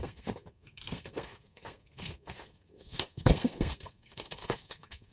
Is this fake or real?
fake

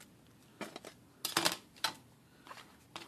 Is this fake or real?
real